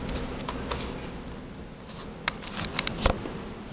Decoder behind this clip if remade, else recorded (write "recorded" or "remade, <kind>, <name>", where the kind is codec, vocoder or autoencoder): recorded